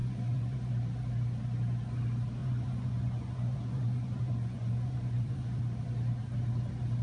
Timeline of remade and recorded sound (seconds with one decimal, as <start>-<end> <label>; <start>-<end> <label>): 0.0-0.7 remade; 0.7-2.4 recorded; 2.4-5.6 remade; 5.6-7.0 recorded